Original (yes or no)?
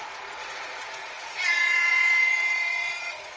no